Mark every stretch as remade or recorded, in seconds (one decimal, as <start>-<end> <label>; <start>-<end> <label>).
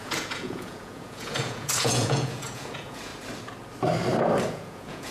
0.0-3.1 remade; 3.1-4.5 recorded; 4.5-5.1 remade